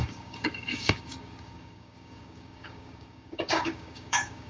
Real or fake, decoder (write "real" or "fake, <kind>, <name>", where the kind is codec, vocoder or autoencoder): fake, codec, DAC